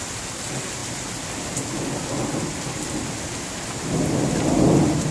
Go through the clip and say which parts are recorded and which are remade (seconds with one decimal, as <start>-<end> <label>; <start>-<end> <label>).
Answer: 0.0-5.1 recorded

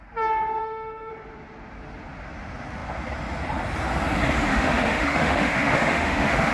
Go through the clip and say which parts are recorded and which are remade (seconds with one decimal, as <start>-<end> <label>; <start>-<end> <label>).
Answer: 0.0-0.6 recorded; 0.6-1.1 remade; 1.1-4.5 recorded; 4.5-6.5 remade

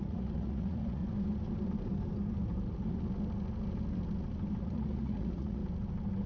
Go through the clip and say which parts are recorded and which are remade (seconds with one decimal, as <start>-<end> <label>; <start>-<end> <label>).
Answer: 0.0-1.0 remade; 1.0-4.6 recorded; 4.6-5.6 remade; 5.6-6.3 recorded

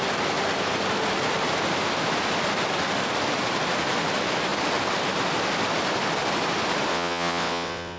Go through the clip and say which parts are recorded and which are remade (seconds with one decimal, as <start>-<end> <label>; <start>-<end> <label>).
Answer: 0.0-6.9 recorded; 6.9-8.0 remade

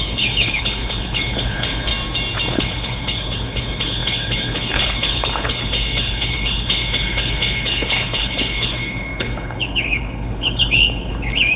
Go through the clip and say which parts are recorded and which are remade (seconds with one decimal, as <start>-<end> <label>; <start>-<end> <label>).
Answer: 0.0-1.9 remade; 1.9-2.5 recorded; 2.5-11.6 remade

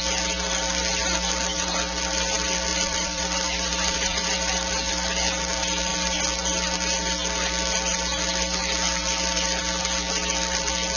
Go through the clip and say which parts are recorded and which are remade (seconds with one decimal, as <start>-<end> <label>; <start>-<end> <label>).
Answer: 0.0-2.7 recorded; 2.7-4.9 remade; 4.9-11.0 recorded

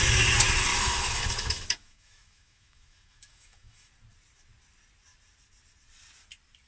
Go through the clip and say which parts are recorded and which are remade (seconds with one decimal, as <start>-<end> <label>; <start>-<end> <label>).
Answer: 0.0-0.7 recorded; 0.7-3.9 remade; 3.9-6.7 recorded